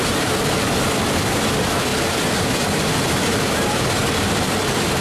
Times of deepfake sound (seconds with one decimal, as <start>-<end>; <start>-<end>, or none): 0.0-5.0